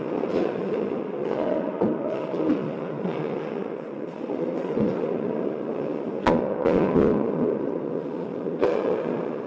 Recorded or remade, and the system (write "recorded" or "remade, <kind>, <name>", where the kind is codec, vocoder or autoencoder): remade, vocoder, Vocos